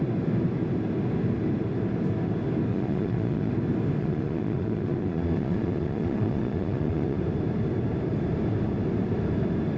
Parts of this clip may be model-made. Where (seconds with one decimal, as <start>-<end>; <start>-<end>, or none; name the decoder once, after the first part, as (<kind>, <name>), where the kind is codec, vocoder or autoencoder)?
2.7-3.5 (vocoder, Vocos); 4.0-7.2